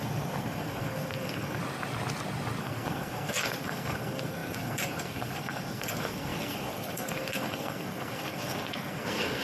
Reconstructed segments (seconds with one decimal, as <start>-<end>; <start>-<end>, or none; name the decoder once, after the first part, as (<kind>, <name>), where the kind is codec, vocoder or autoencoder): 0.0-1.6 (codec, SNAC); 2.6-9.4